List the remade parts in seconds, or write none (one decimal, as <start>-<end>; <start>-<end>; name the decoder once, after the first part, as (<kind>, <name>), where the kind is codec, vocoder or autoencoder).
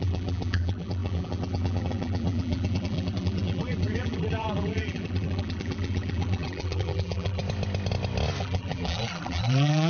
0.0-7.4 (vocoder, BigVGAN v2); 8.4-9.9